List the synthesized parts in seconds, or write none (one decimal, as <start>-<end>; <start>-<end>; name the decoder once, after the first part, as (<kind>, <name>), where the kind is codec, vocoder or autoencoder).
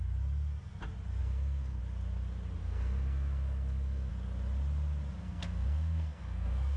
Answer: 1.2-1.8 (codec, SNAC); 2.6-4.1; 5.2-6.8